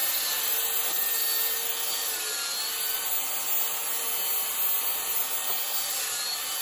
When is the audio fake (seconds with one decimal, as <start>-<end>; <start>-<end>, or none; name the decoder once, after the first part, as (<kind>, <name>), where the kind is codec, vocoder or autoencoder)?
none